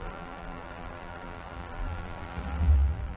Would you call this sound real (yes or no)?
no